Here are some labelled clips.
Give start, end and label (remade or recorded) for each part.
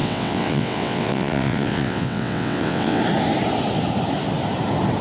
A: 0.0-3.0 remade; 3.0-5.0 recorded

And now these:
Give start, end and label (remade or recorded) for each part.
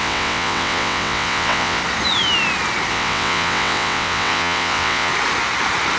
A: 0.0-1.8 remade; 1.8-2.9 recorded; 2.9-5.1 remade; 5.1-6.0 recorded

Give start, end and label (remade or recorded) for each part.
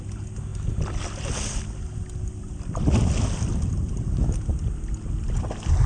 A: 0.0-5.9 recorded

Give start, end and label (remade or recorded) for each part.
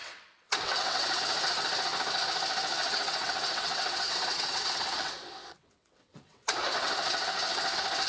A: 0.0-1.2 remade; 1.2-2.8 recorded; 2.8-6.8 remade; 6.8-8.1 recorded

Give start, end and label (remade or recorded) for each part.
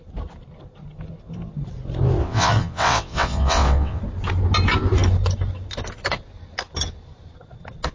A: 0.0-2.2 recorded; 2.2-4.0 remade; 4.0-7.9 recorded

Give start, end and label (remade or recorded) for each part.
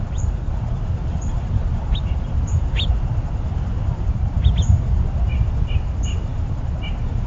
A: 0.0-7.3 recorded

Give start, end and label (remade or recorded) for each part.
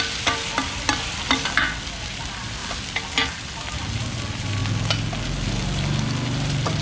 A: 0.0-6.8 recorded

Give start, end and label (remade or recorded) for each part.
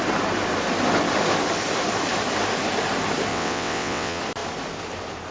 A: 0.0-3.3 recorded; 3.3-4.2 remade; 4.2-5.3 recorded